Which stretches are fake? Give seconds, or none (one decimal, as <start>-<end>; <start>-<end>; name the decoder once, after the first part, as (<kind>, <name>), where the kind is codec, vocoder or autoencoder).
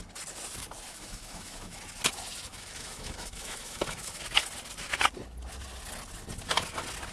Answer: 0.9-1.8 (autoencoder, DAC-VAE); 2.5-4.2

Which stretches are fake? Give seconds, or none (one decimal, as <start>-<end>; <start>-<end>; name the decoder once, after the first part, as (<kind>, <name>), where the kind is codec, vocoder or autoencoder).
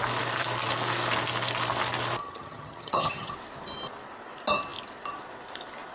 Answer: 2.2-3.3 (vocoder, HiFi-GAN)